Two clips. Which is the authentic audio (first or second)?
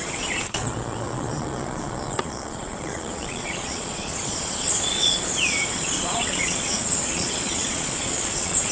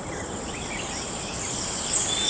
second